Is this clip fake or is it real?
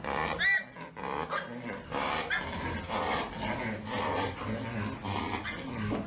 real